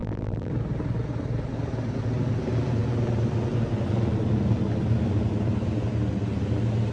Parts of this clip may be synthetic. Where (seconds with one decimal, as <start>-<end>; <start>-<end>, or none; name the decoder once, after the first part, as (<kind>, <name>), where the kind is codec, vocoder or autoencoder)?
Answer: 0.0-0.5 (vocoder, BigVGAN v2)